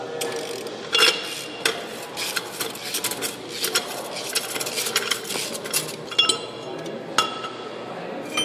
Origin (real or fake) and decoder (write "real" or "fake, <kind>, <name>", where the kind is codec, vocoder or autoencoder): real